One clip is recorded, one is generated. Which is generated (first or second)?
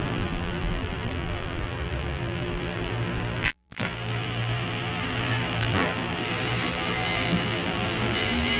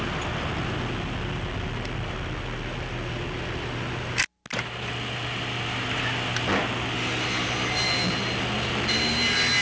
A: first